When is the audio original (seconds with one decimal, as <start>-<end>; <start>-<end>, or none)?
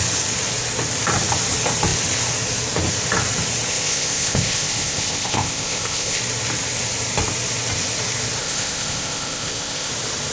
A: 0.0-3.7; 6.2-8.4; 9.9-10.3